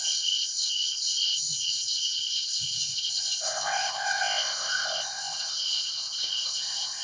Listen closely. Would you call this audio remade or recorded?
remade